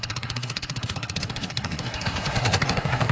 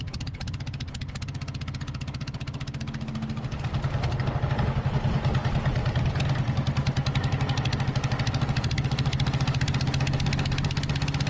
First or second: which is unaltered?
second